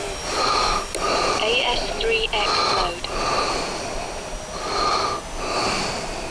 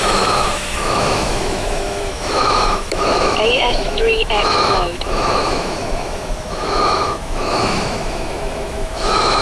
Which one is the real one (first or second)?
first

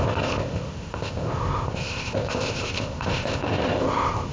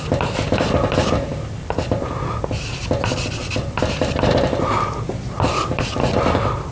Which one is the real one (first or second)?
second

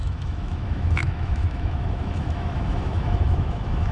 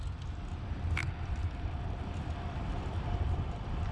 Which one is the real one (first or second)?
second